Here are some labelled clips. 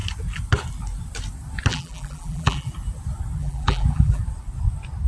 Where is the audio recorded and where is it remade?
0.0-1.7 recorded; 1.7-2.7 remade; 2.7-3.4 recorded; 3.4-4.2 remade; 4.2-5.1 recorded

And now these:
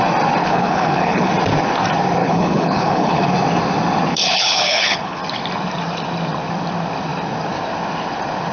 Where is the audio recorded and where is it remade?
0.0-0.4 recorded; 0.4-1.3 remade; 1.3-2.2 recorded; 2.2-3.3 remade; 3.3-4.1 recorded; 4.1-5.2 remade; 5.2-8.5 recorded